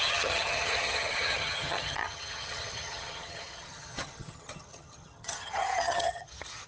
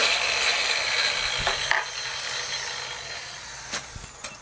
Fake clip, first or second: first